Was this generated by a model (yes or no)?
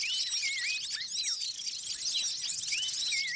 no